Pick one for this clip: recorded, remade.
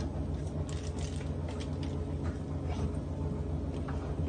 recorded